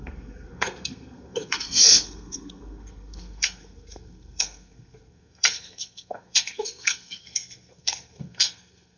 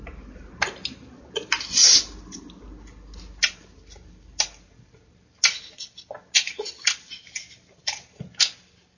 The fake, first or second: first